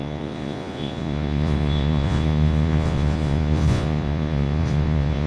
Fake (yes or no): yes